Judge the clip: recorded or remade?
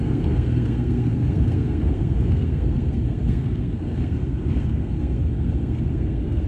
remade